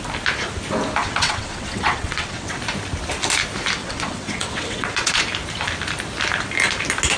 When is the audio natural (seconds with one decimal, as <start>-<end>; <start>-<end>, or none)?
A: 0.0-1.0; 2.6-3.8; 5.2-7.2